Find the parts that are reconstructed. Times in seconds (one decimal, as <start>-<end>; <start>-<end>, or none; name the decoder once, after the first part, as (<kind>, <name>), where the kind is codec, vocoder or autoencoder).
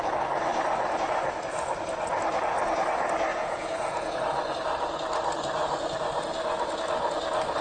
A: 3.3-4.2 (vocoder, Vocos)